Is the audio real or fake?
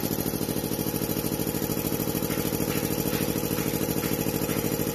real